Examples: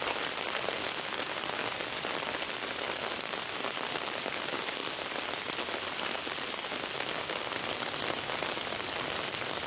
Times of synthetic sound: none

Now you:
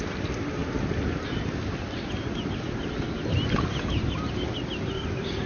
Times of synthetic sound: none

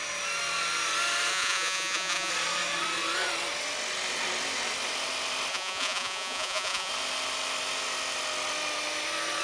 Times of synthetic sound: 1.3-2.3 (vocoder, Vocos); 5.5-6.9

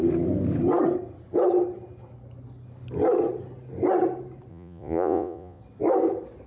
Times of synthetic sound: 4.5-5.6 (vocoder, Vocos)

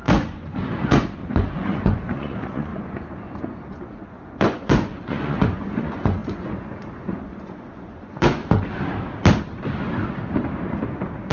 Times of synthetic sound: 0.0-8.4 (vocoder, Vocos)